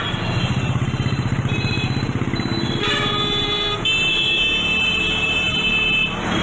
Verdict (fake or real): real